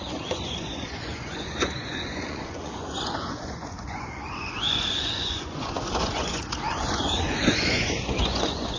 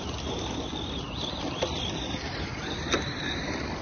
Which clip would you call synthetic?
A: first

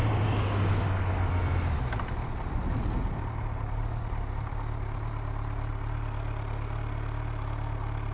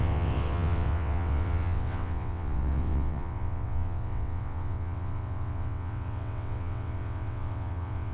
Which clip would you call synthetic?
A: second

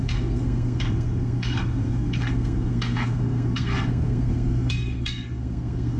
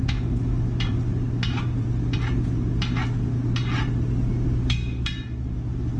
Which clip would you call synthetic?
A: first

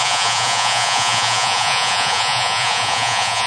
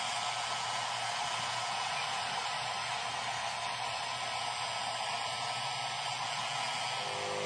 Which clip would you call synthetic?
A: first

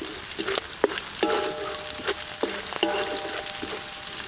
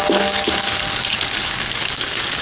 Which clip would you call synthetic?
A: second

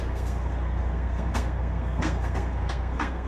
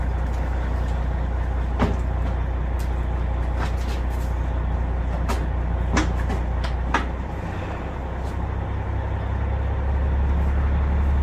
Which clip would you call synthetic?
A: first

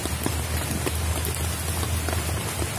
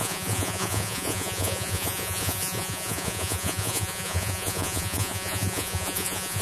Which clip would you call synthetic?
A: second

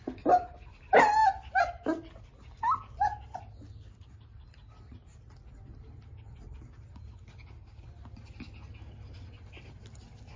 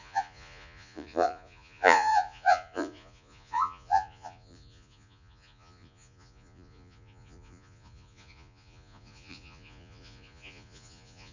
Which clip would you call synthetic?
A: second